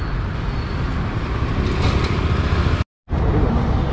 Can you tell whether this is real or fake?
real